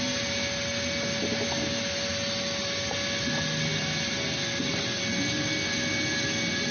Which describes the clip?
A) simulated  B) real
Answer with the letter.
B